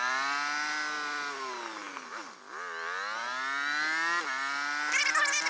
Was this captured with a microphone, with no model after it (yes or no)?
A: yes